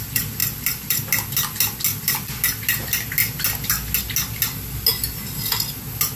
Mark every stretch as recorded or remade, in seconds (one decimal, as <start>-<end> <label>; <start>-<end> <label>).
0.0-6.2 recorded